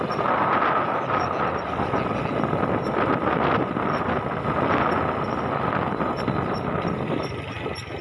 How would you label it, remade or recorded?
recorded